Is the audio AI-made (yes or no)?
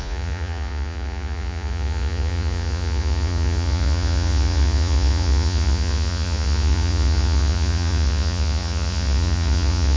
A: yes